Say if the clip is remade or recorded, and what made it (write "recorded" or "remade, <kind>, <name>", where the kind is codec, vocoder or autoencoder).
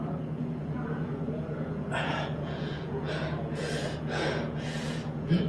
remade, vocoder, Vocos